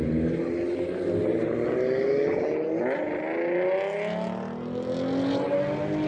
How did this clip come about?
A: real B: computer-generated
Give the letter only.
A